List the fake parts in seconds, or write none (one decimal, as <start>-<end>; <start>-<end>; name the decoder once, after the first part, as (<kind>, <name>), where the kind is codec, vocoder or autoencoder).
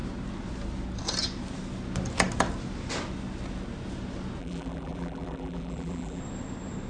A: 4.4-6.2 (vocoder, BigVGAN v2)